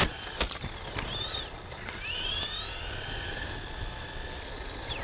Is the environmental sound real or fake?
real